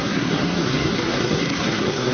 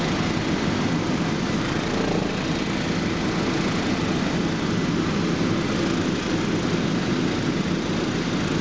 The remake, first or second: first